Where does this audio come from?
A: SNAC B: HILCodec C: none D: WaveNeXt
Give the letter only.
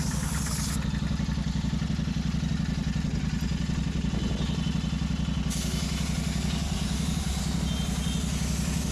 C